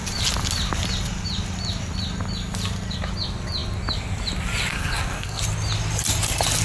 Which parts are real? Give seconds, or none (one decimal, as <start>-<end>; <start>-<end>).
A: 0.0-4.7; 5.4-6.6